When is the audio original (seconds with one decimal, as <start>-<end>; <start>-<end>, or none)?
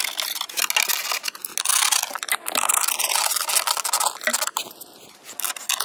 0.0-5.8